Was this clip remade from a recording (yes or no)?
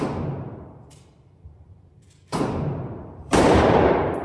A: yes